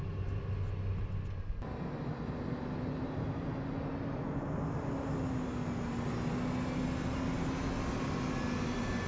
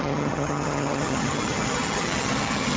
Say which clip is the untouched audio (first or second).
first